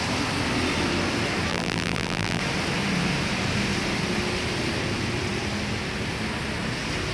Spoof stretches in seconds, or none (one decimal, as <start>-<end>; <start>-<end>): 1.5-2.4